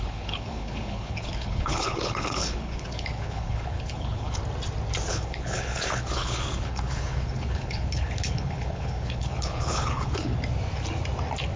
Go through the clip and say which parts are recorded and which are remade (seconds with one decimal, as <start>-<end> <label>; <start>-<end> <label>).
0.0-4.4 remade; 4.4-5.1 recorded; 5.1-10.3 remade; 10.3-11.6 recorded